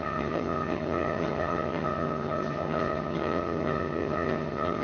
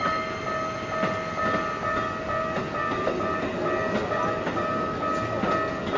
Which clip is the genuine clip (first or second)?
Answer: second